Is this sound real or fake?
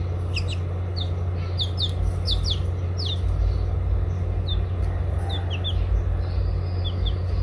real